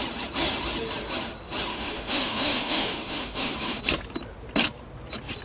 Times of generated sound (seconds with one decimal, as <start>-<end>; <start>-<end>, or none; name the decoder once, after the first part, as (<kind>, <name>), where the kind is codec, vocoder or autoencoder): 1.7-3.8 (autoencoder, DAC-VAE)